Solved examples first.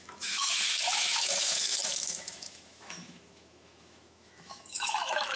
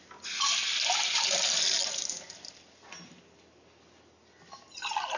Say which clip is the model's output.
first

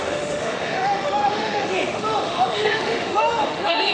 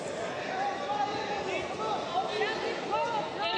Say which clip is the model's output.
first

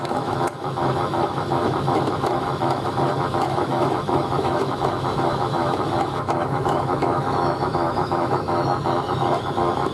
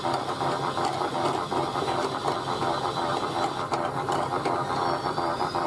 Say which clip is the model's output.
first